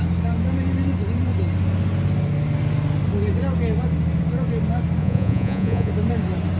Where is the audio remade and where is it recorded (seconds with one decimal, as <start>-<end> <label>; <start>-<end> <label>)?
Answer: 0.0-5.0 recorded; 5.0-5.9 remade; 5.9-6.6 recorded